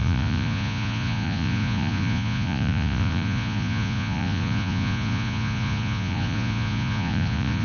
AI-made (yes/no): yes